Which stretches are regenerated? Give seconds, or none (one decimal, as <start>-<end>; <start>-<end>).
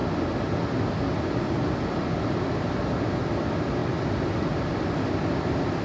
none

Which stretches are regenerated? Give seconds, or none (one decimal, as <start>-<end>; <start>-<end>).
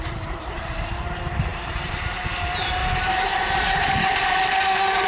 1.5-2.4; 2.8-4.4